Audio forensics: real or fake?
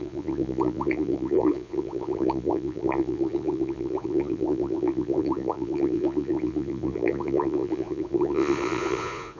fake